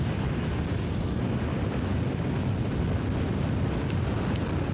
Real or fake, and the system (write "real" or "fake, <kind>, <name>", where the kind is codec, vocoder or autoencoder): real